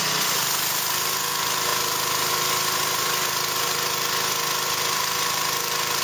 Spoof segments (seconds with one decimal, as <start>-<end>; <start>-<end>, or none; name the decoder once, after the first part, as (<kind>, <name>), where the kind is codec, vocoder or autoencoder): none

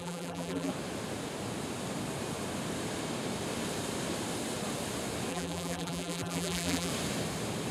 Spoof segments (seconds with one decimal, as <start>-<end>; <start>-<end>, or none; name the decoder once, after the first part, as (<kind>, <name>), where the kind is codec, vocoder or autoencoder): 0.0-0.7 (vocoder, BigVGAN v2); 5.3-6.9